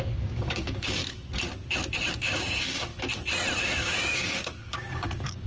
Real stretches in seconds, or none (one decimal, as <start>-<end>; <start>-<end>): 1.0-2.1; 2.9-3.6